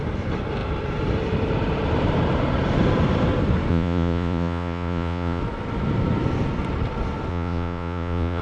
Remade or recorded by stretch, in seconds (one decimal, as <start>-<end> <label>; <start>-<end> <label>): 0.0-3.7 recorded; 3.7-5.4 remade; 5.4-7.3 recorded; 7.3-8.4 remade